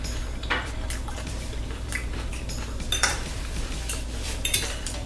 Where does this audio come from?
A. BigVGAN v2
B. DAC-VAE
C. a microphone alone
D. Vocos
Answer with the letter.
A